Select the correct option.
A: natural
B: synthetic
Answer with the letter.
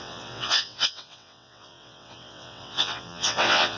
B